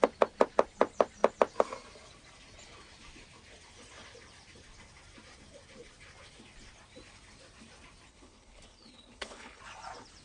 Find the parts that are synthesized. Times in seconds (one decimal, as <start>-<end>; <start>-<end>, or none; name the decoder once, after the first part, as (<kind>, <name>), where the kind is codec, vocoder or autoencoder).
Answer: 8.1-9.6 (codec, HILCodec)